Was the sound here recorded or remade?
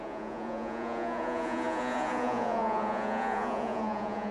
remade